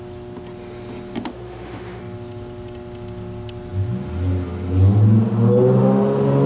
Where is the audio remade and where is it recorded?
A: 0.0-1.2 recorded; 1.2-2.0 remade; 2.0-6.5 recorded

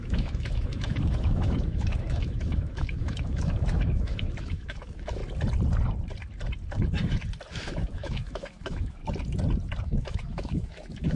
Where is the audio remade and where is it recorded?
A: 0.0-5.2 remade; 5.2-7.5 recorded; 7.5-9.0 remade; 9.0-9.8 recorded; 9.8-11.2 remade

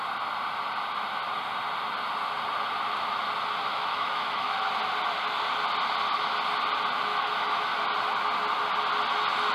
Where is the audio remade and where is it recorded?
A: 0.0-3.7 recorded; 3.7-4.6 remade; 4.6-7.1 recorded; 7.1-7.6 remade; 7.6-9.5 recorded

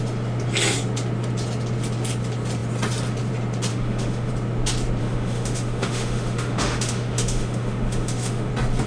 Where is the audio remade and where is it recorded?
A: 0.0-3.7 recorded; 3.7-4.3 remade; 4.3-5.0 recorded; 5.0-8.5 remade; 8.5-8.9 recorded

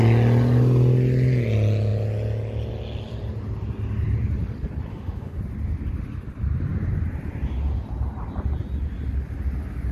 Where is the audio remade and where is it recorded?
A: 0.0-4.9 recorded; 4.9-5.4 remade; 5.4-9.9 recorded

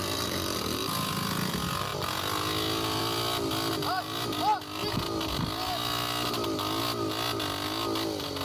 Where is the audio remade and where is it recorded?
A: 0.0-8.4 recorded

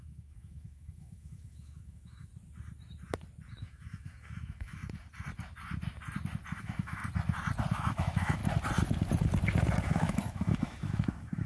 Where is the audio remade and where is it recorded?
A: 0.0-2.3 remade; 2.3-3.5 recorded; 3.5-4.8 remade; 4.8-6.6 recorded; 6.6-7.0 remade; 7.0-7.7 recorded; 7.7-8.4 remade; 8.4-9.8 recorded; 9.8-11.5 remade